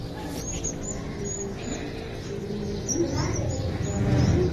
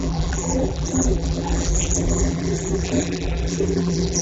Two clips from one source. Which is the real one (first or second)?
first